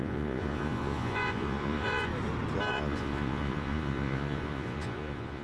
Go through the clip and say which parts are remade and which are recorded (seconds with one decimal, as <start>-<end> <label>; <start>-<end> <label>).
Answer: 0.0-2.1 remade; 2.1-2.7 recorded; 2.7-5.4 remade